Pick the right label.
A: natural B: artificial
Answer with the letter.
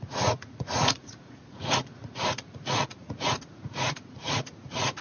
B